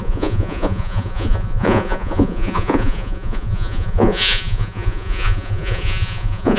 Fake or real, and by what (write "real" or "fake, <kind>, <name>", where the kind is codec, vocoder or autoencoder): fake, vocoder, Vocos